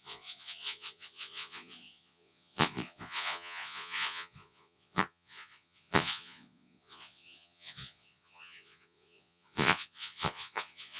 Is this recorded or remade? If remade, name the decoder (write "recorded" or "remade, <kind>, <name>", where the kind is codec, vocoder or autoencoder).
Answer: remade, vocoder, Vocos